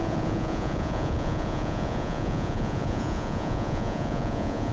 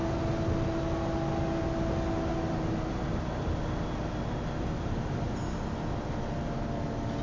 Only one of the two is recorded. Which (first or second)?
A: second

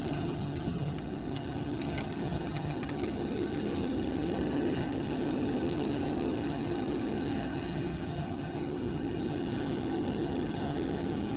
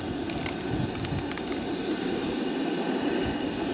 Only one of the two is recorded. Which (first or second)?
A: second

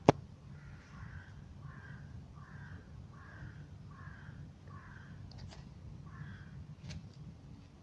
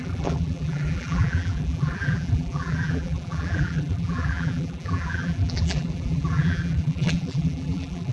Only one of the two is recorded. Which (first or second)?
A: first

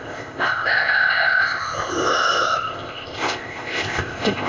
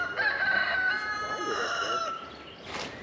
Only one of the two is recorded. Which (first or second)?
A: second